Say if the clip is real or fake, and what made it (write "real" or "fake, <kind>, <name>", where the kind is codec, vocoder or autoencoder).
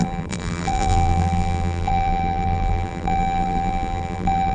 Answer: fake, vocoder, BigVGAN v2